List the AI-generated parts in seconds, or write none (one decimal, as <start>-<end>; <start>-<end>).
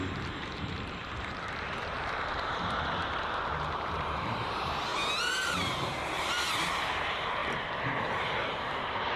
0.0-4.9; 6.9-7.4; 8.0-9.2